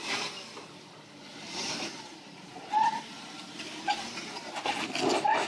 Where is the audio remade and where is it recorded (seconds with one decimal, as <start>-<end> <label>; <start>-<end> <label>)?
0.0-1.3 recorded; 1.3-3.6 remade; 3.6-5.5 recorded